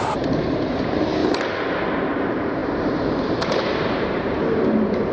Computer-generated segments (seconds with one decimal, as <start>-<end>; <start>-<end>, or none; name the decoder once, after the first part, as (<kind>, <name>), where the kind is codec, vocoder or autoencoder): 0.0-1.2 (vocoder, BigVGAN v2); 1.9-5.1